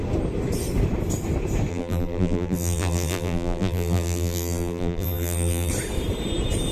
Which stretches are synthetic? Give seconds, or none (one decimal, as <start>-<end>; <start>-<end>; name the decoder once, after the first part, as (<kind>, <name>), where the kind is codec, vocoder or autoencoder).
1.7-5.7 (vocoder, BigVGAN v2)